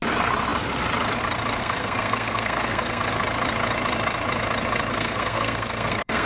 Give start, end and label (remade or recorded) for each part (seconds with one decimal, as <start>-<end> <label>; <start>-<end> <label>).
0.0-1.6 recorded; 1.6-3.1 remade; 3.1-4.9 recorded; 4.9-6.3 remade